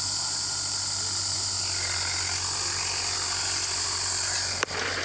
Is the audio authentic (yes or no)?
yes